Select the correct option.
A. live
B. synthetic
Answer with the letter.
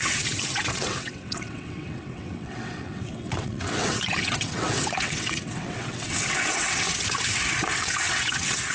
B